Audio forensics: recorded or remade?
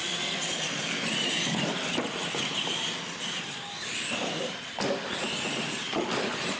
recorded